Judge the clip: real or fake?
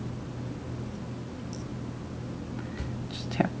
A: real